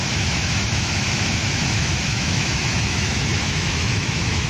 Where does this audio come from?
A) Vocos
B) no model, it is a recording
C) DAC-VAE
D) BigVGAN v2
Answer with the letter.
C